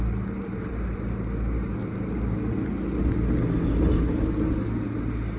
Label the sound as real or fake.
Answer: real